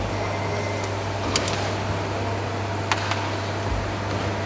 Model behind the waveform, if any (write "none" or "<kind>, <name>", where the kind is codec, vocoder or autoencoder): none